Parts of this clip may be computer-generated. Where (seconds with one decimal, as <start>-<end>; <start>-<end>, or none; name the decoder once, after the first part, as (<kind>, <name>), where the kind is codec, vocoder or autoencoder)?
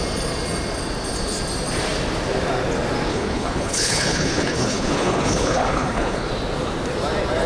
3.1-6.3 (codec, HILCodec)